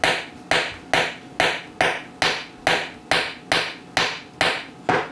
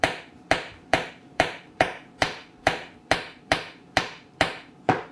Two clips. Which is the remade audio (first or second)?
second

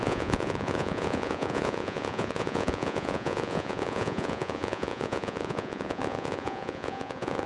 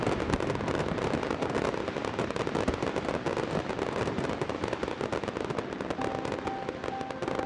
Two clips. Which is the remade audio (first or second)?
first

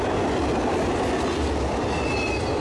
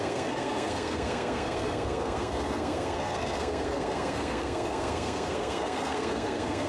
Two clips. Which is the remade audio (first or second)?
second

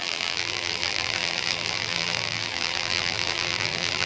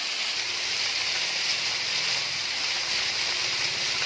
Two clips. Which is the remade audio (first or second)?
first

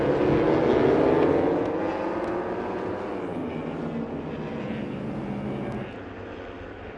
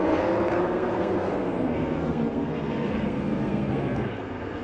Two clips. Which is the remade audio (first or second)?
second